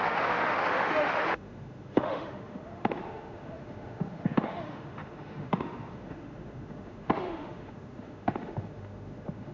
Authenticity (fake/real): fake